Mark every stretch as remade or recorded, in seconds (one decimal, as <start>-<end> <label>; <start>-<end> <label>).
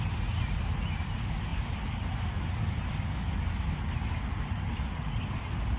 0.0-5.8 recorded